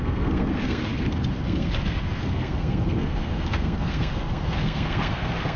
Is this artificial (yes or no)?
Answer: yes